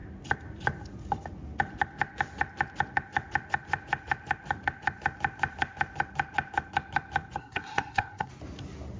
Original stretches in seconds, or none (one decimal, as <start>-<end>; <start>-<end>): 0.0-7.4; 8.3-9.0